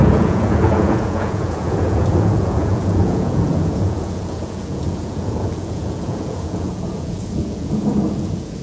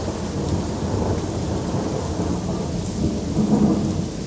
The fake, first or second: first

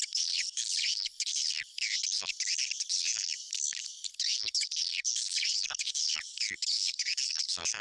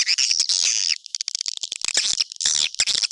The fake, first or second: first